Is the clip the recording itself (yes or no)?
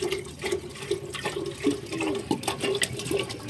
no